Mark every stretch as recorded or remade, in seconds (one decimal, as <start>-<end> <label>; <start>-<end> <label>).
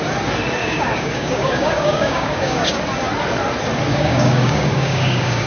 0.0-0.6 recorded; 0.6-2.8 remade; 2.8-3.9 recorded; 3.9-5.5 remade